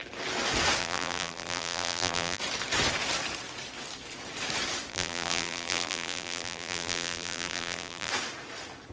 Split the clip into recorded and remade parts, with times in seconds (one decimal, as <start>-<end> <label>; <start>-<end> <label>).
0.0-0.8 recorded; 0.8-2.4 remade; 2.4-4.9 recorded; 4.9-8.1 remade; 8.1-8.9 recorded